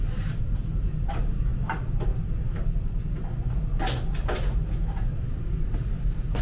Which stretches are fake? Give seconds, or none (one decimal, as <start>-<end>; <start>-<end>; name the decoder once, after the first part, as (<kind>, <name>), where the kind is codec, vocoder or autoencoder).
none